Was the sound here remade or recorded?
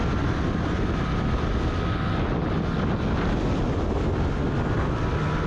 recorded